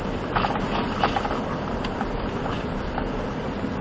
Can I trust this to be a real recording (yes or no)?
yes